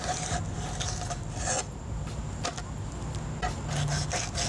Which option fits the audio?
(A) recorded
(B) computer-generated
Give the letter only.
A